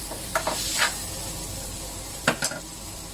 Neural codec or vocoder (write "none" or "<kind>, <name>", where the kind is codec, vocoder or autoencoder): none